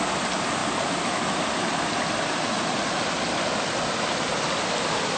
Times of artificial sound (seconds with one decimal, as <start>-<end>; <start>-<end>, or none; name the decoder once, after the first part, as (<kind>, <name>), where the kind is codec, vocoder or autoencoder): none